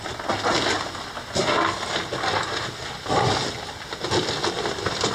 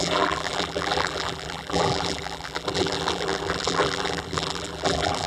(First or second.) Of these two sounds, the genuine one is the first